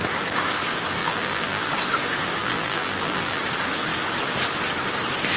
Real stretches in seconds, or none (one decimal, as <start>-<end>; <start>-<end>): 0.0-1.0; 1.7-2.4; 3.4-5.4